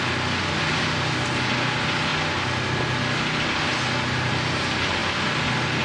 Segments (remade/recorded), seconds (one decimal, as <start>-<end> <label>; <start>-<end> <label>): 0.0-5.8 recorded